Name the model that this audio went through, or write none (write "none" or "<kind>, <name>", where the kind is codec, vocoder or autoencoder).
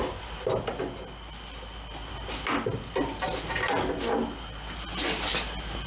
none